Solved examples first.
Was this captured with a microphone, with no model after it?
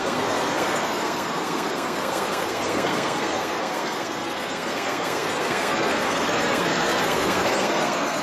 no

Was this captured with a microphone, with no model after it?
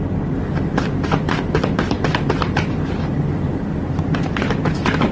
yes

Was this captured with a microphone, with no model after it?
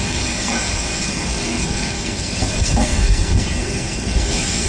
no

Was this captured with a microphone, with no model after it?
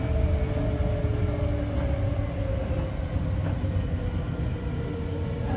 yes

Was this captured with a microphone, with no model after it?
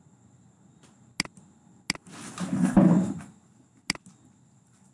yes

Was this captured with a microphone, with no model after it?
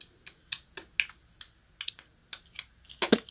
yes